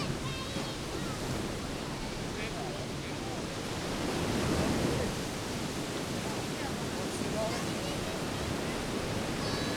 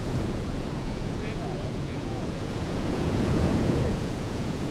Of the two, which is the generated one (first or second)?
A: second